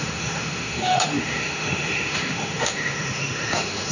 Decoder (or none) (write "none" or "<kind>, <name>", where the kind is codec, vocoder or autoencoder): autoencoder, DAC-VAE